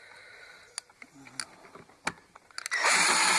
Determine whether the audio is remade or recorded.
recorded